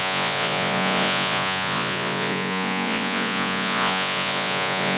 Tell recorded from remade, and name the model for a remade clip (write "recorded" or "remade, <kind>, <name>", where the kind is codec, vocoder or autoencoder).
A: remade, vocoder, Vocos